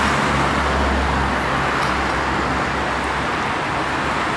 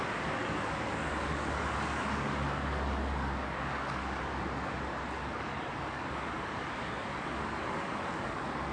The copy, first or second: second